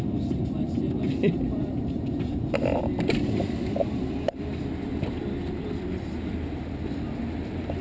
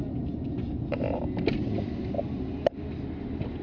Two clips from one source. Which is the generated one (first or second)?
first